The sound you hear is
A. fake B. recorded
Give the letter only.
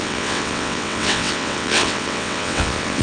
A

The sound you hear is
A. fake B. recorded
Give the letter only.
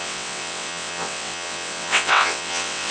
A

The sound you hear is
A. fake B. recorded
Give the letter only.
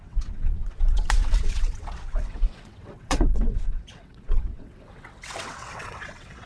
A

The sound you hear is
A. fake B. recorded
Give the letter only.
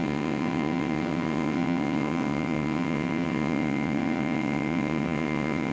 A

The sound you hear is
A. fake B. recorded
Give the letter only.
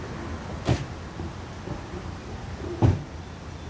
B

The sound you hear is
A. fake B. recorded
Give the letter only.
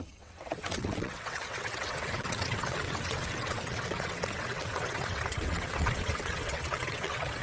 A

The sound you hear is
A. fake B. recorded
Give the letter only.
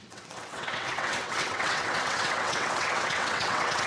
A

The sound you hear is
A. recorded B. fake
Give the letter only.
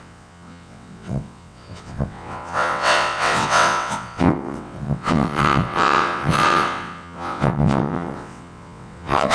B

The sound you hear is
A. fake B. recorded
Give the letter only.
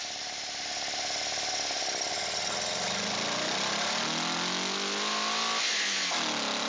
B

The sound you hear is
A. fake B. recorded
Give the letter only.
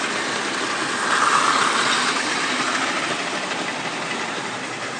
B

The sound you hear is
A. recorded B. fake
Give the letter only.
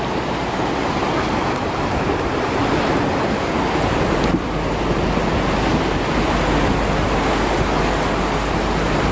A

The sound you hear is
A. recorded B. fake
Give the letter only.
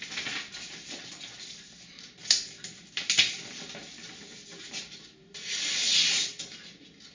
A